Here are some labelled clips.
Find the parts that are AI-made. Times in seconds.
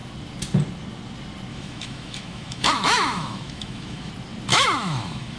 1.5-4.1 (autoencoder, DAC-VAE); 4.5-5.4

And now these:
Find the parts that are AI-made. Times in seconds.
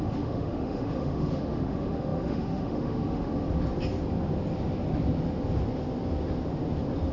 0.0-3.3 (autoencoder, DAC-VAE)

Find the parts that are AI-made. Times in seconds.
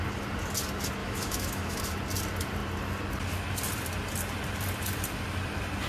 1.0-1.8 (autoencoder, DAC-VAE)